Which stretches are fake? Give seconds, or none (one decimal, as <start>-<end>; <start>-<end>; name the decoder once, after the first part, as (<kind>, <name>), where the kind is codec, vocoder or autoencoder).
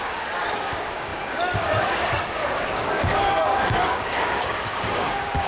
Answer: 0.0-5.5 (codec, DAC)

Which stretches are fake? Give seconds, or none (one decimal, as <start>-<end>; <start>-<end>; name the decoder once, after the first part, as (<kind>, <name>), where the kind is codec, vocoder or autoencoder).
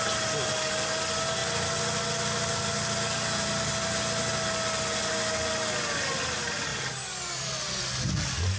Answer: none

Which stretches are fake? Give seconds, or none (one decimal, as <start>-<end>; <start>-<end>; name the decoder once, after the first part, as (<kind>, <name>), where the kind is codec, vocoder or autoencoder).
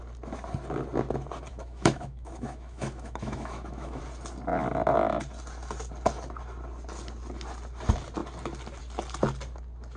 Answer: 1.5-4.0 (autoencoder, DAC-VAE)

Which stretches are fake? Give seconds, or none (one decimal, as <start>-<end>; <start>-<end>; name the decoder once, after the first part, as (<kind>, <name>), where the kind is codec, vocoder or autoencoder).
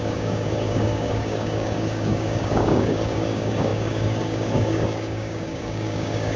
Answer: 0.0-6.4 (codec, DAC)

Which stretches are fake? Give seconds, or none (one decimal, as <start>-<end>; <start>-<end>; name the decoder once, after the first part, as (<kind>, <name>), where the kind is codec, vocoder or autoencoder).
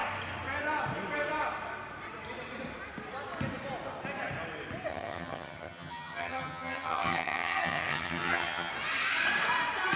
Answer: 4.9-8.7 (vocoder, HiFi-GAN)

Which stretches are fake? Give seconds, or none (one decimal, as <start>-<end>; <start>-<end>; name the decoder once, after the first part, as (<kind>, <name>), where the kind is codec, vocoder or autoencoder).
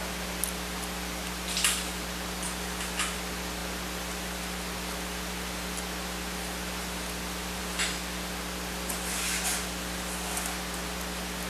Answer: none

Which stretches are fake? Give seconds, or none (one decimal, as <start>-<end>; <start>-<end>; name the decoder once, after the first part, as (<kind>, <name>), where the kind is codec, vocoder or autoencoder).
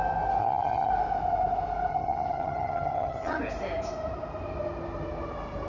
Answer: 0.4-0.9 (vocoder, HiFi-GAN); 1.9-3.4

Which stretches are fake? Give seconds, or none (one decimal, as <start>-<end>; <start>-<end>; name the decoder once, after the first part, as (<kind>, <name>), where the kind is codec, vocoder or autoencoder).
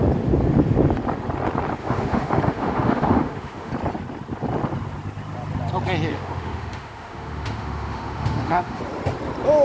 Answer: 1.8-3.7 (autoencoder, DAC-VAE); 6.1-8.8